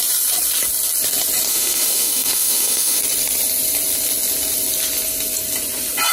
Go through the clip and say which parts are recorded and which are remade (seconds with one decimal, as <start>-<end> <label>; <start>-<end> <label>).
0.0-1.5 recorded; 1.5-3.0 remade; 3.0-6.1 recorded